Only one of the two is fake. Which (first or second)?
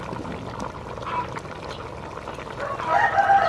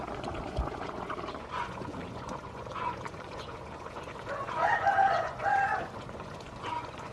second